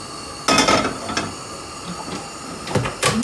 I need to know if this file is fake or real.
real